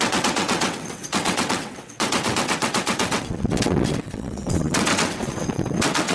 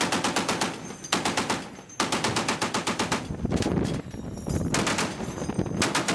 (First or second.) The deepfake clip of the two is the first